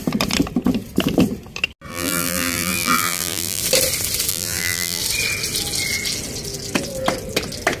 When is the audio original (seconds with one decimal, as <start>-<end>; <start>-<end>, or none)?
0.0-1.9; 3.6-4.3; 5.0-7.8